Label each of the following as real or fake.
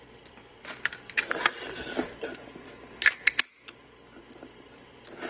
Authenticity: fake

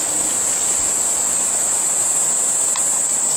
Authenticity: real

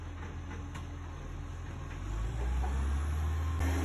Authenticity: real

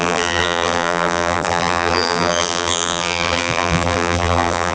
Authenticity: fake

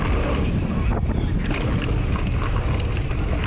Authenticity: real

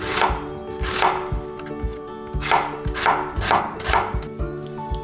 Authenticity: real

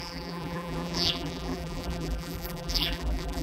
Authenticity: fake